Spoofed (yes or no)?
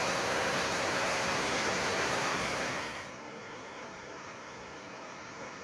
yes